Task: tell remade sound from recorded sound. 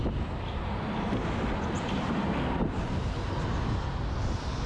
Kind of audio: recorded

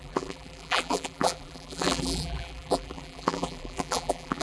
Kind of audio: remade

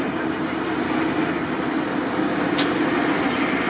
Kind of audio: recorded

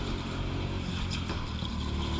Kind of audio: recorded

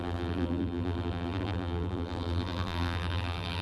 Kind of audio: remade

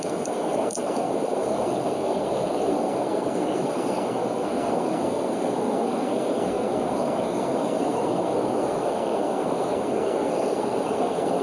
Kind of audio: remade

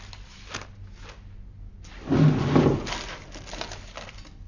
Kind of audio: recorded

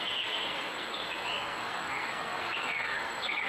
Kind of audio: remade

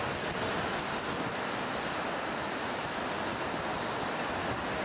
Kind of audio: recorded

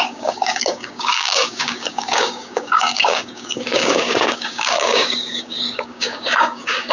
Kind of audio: remade